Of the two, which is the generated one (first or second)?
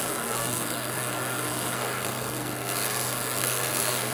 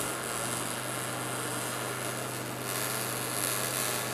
first